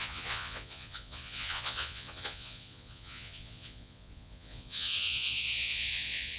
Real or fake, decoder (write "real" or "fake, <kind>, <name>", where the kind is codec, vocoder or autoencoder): fake, vocoder, Vocos